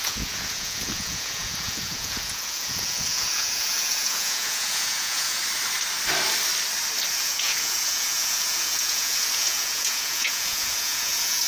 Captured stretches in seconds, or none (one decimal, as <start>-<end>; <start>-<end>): 5.4-7.1